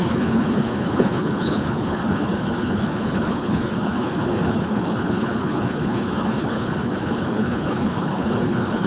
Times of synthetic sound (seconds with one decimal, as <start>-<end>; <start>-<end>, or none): 0.0-8.9